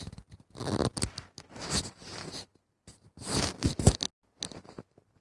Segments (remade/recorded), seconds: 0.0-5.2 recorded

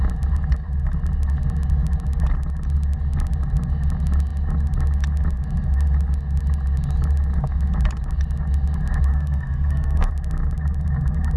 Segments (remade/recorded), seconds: 0.0-9.1 recorded; 9.1-10.1 remade; 10.1-11.4 recorded

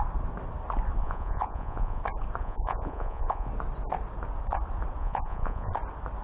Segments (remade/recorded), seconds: 0.0-1.0 recorded; 1.0-2.0 remade; 2.0-2.4 recorded; 2.4-3.5 remade; 3.5-5.0 recorded; 5.0-5.7 remade; 5.7-6.2 recorded

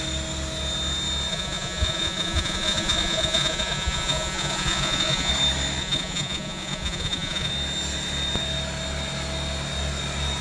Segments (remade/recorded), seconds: 0.0-1.3 recorded; 1.3-5.3 remade; 5.3-5.8 recorded; 5.8-7.5 remade; 7.5-10.4 recorded